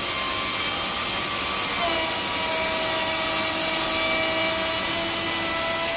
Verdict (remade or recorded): recorded